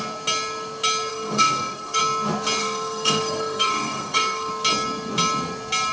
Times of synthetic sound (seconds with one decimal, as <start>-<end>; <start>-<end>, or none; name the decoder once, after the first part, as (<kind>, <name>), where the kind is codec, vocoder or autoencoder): 1.1-2.0 (codec, SNAC); 2.6-4.5